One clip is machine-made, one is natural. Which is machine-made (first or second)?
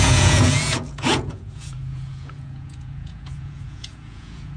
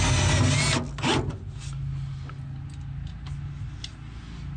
first